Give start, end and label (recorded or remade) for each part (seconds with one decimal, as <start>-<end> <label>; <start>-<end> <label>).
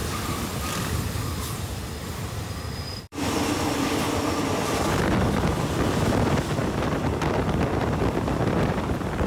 0.0-0.7 remade; 0.7-2.9 recorded; 2.9-5.3 remade; 5.3-9.3 recorded